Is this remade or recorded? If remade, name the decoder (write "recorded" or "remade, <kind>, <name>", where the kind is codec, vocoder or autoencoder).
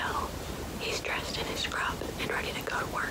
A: recorded